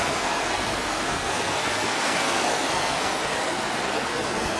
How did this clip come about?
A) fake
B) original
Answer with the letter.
A